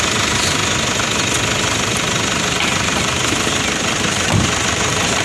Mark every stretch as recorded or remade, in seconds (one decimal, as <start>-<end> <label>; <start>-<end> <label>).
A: 0.0-0.6 remade; 0.6-2.5 recorded; 2.5-5.2 remade